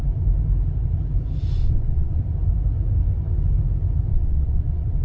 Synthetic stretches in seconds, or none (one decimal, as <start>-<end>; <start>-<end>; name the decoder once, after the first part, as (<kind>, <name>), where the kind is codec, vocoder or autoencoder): 1.6-2.2 (vocoder, WaveNeXt); 4.1-5.0